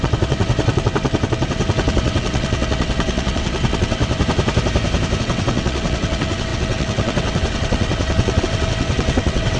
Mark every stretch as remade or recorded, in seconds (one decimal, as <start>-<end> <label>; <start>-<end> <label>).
0.0-4.0 remade; 4.0-5.2 recorded; 5.2-9.6 remade